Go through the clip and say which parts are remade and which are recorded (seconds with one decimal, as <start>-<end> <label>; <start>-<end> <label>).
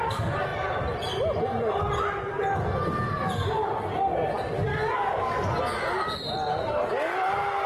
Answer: 0.0-4.7 recorded; 4.7-5.6 remade; 5.6-7.7 recorded